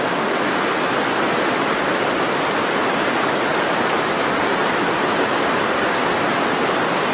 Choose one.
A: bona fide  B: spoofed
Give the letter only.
A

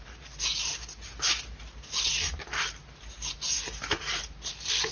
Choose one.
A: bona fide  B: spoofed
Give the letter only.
A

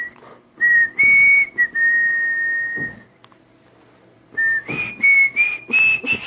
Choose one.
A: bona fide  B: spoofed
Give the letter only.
A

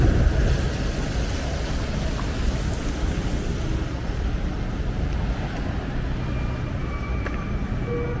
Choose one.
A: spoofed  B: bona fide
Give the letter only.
B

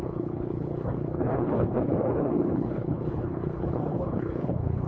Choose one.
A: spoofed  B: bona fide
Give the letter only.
A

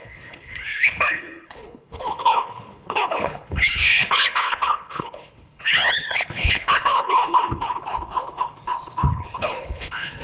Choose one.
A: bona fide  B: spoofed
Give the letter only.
B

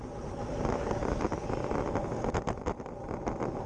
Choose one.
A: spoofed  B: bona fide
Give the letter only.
B